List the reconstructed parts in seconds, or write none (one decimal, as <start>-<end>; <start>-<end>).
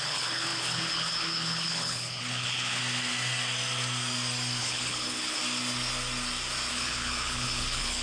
0.0-2.8; 4.6-5.4; 6.7-8.0